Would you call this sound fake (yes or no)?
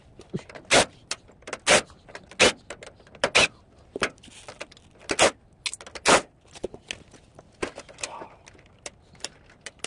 no